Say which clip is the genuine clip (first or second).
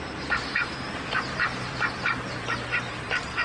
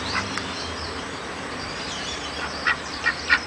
second